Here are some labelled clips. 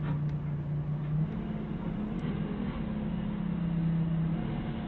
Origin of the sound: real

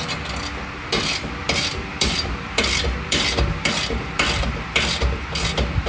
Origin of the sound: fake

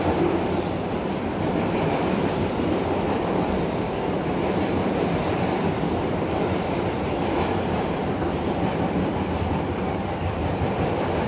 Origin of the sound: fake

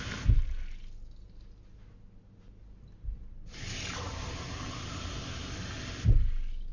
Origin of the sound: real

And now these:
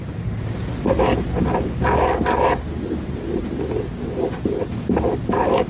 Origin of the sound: real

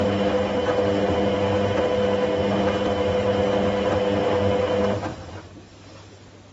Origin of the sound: real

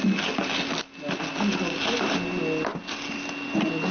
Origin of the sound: real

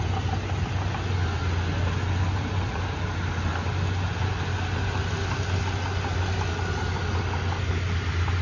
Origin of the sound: real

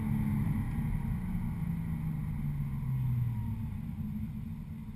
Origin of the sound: real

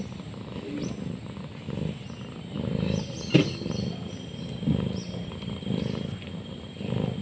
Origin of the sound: real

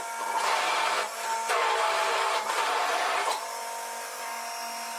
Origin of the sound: real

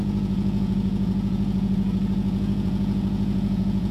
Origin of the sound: fake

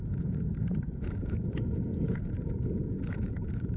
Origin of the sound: fake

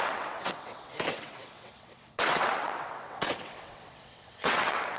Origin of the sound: fake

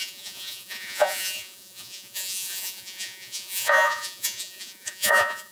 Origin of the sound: fake